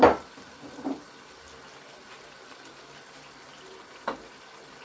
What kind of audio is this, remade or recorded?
recorded